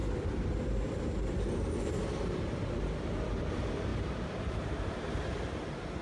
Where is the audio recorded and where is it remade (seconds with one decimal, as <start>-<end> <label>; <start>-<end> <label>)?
0.0-3.9 recorded; 3.9-5.1 remade; 5.1-6.0 recorded